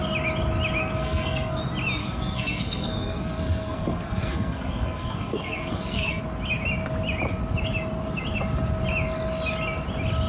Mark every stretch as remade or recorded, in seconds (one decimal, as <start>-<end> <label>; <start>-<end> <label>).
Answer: 0.0-0.8 recorded; 0.8-1.6 remade; 1.6-2.0 recorded; 2.0-6.2 remade; 6.2-10.3 recorded